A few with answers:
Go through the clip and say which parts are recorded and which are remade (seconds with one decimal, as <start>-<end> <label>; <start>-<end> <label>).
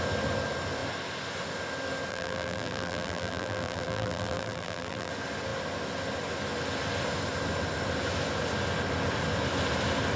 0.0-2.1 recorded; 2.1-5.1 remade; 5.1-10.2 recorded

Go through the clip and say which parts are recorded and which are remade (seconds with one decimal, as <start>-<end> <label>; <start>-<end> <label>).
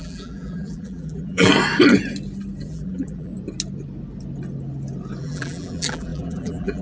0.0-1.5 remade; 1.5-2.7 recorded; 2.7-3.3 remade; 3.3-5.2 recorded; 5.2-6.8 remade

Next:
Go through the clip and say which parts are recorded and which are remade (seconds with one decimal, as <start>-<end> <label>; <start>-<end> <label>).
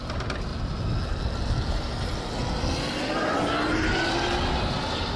0.0-5.2 recorded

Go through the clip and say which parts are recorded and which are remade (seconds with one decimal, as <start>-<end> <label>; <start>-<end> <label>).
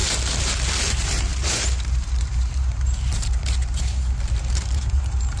0.0-0.7 recorded; 0.7-5.4 remade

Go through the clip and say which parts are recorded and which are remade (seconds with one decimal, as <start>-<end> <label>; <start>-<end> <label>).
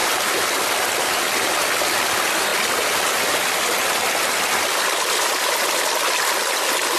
0.0-7.0 recorded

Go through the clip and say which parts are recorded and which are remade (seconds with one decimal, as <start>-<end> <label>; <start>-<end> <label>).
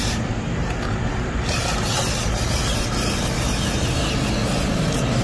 0.0-1.6 remade; 1.6-4.7 recorded; 4.7-5.2 remade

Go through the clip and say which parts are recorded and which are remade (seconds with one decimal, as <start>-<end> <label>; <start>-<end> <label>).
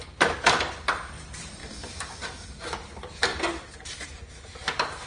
0.0-1.6 remade; 1.6-2.5 recorded; 2.5-3.3 remade; 3.3-4.6 recorded; 4.6-5.1 remade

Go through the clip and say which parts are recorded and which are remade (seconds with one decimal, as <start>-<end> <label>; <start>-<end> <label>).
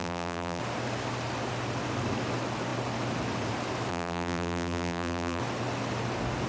0.0-0.6 remade; 0.6-3.9 recorded; 3.9-5.4 remade; 5.4-6.5 recorded